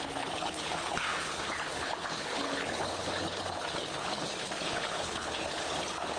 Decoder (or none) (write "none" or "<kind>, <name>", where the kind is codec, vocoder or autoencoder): codec, HILCodec